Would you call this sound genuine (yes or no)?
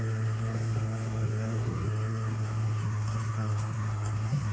no